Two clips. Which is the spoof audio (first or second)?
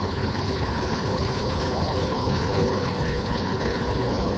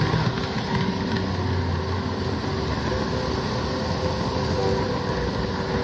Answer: first